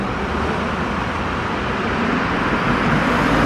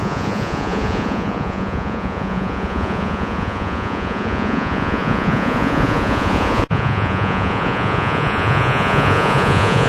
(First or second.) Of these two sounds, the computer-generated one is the second